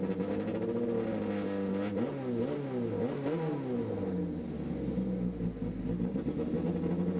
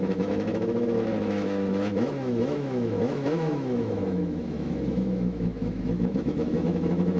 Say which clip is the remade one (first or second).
second